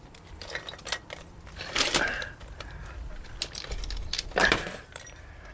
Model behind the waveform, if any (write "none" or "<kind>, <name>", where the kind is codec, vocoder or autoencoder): none